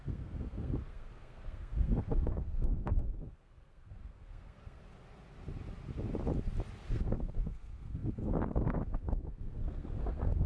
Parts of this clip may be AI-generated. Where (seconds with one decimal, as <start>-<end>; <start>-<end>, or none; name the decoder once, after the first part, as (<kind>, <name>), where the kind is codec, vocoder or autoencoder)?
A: 0.0-4.8 (codec, SNAC); 6.9-10.5